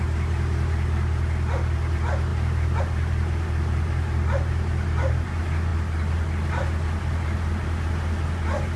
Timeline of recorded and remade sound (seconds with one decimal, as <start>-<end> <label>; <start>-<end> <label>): 0.0-8.8 recorded